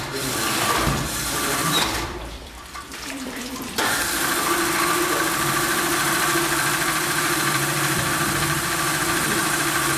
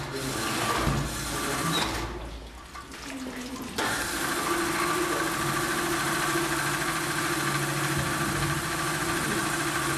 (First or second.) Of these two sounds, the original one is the second